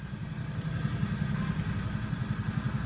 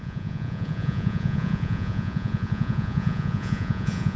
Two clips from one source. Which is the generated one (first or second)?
second